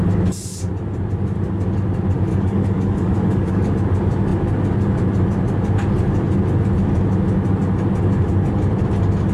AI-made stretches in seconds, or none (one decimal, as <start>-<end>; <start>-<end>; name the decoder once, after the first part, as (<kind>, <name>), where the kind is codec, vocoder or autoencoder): 2.3-3.7 (codec, DAC)